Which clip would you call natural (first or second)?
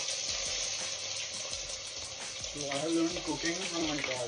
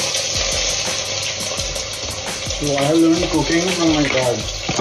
second